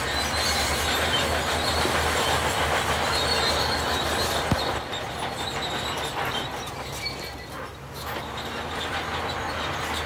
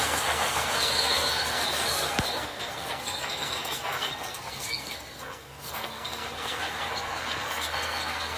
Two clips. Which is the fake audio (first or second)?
second